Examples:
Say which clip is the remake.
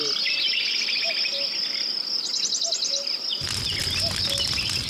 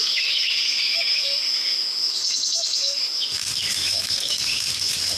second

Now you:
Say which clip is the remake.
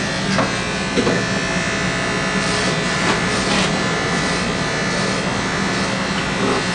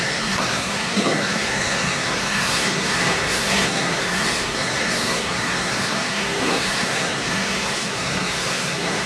second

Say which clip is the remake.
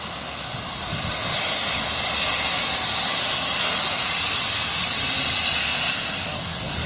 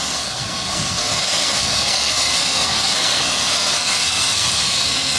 second